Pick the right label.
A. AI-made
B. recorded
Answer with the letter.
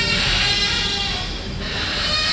B